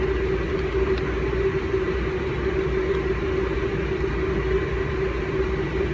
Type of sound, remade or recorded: recorded